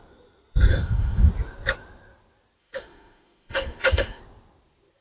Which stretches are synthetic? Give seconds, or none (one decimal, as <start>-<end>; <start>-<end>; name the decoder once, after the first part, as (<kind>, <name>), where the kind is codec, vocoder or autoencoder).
0.7-1.3 (autoencoder, DAC-VAE); 2.6-4.2